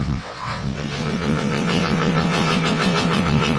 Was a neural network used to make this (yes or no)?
yes